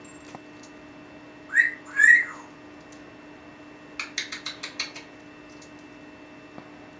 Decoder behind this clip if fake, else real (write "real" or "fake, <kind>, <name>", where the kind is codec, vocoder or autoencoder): real